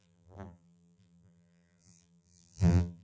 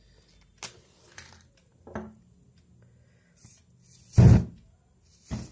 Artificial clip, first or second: first